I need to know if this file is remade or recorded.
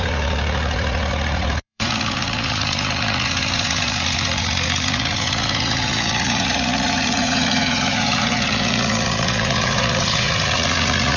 remade